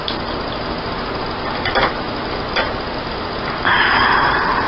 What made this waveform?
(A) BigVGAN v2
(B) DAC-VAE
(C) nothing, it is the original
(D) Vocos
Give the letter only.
C